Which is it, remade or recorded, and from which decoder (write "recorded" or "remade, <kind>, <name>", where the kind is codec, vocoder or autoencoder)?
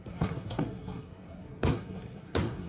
remade, codec, SNAC